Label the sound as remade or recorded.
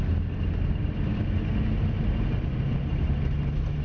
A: recorded